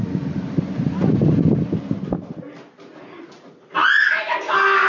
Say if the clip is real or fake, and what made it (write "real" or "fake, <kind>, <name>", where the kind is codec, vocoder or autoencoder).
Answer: real